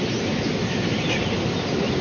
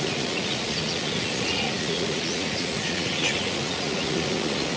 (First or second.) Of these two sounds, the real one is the first